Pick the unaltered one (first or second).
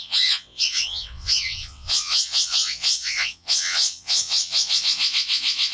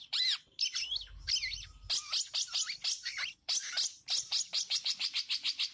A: second